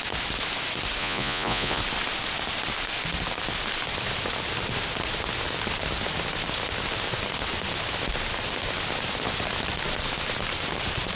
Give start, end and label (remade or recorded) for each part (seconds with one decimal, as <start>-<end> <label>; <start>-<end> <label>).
0.0-1.0 recorded; 1.0-1.8 remade; 1.8-11.2 recorded